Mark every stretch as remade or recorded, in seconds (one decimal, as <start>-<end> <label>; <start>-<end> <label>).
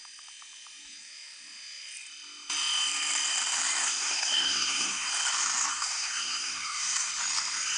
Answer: 0.0-3.8 recorded; 3.8-5.1 remade; 5.1-5.7 recorded; 5.7-7.1 remade; 7.1-7.8 recorded